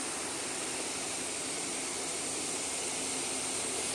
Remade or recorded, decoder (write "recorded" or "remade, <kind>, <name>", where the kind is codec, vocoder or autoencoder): recorded